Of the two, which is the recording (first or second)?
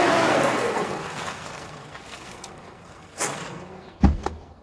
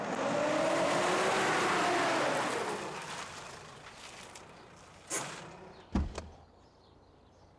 second